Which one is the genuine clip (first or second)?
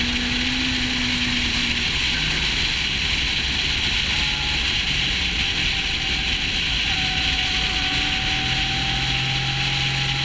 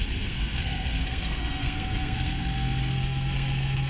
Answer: first